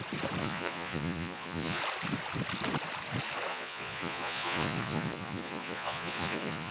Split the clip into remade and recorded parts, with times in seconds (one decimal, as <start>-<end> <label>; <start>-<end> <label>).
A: 0.0-0.4 recorded; 0.4-1.8 remade; 1.8-3.5 recorded; 3.5-6.7 remade